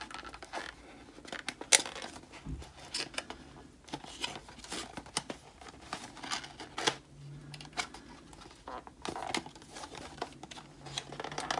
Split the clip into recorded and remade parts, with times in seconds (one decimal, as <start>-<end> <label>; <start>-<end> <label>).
0.0-11.6 recorded

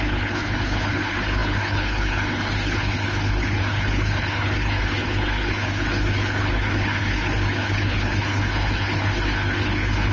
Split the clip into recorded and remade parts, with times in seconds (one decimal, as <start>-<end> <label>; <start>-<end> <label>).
0.0-10.1 remade

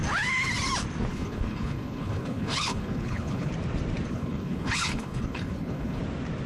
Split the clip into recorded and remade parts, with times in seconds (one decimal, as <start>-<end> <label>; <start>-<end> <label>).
0.0-1.1 recorded; 1.1-3.5 remade; 3.5-4.1 recorded; 4.1-6.0 remade; 6.0-6.5 recorded

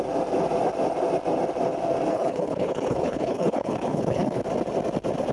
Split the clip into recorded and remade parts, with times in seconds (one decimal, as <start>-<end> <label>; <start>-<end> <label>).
0.0-2.1 recorded; 2.1-4.4 remade; 4.4-5.3 recorded

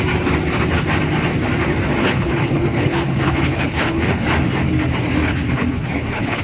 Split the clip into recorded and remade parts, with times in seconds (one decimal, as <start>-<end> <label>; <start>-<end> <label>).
0.0-2.0 recorded; 2.0-4.3 remade; 4.3-5.2 recorded; 5.2-6.4 remade

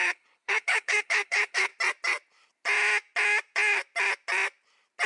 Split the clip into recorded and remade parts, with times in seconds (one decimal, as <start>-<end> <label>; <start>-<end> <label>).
0.0-1.7 remade; 1.7-5.1 recorded

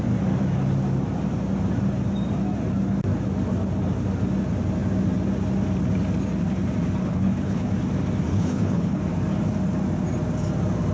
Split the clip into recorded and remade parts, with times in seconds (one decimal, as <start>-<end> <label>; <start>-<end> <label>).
0.0-7.0 recorded; 7.0-7.7 remade; 7.7-8.3 recorded; 8.3-9.0 remade; 9.0-10.9 recorded